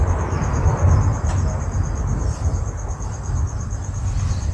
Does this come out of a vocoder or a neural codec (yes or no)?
yes